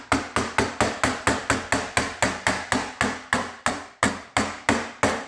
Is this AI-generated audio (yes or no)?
no